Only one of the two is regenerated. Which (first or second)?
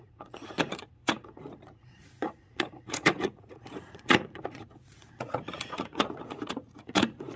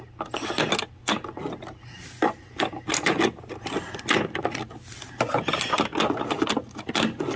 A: first